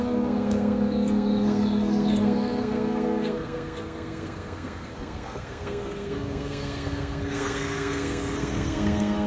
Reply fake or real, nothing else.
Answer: fake